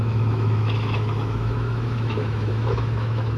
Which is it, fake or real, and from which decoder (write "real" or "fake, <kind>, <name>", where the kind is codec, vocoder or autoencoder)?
fake, autoencoder, DAC-VAE